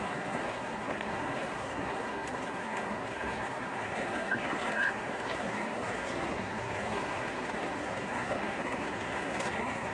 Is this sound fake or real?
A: fake